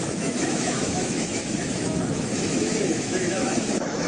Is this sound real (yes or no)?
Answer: no